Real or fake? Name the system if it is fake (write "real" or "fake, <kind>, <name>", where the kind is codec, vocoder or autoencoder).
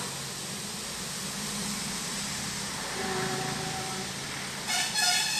real